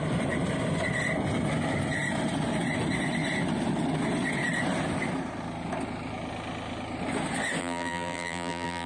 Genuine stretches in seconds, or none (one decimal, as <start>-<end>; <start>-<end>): 0.0-7.6